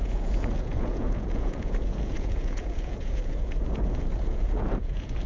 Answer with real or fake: fake